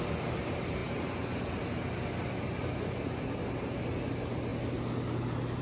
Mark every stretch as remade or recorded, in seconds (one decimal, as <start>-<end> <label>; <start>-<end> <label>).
0.0-5.6 recorded